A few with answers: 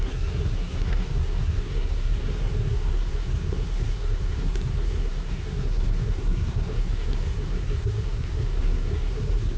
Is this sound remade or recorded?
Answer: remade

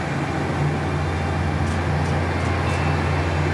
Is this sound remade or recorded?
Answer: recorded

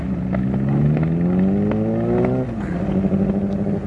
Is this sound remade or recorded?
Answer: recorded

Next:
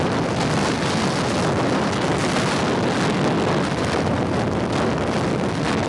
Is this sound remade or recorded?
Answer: recorded